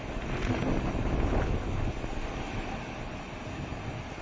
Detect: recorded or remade recorded